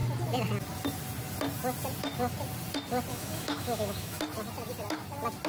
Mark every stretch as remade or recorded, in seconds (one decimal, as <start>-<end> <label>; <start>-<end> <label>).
0.0-3.1 recorded; 3.1-4.2 remade; 4.2-5.5 recorded